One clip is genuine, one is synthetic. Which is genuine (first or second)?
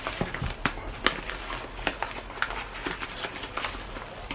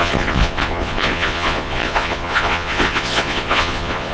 first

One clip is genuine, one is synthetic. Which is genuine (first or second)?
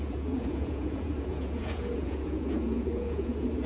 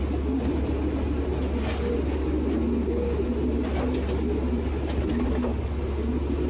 second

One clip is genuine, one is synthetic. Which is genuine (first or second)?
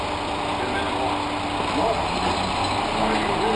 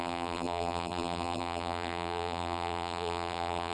first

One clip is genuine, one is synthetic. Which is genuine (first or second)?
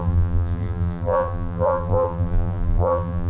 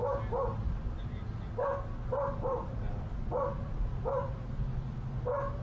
second